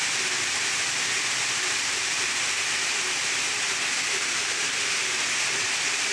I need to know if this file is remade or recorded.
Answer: recorded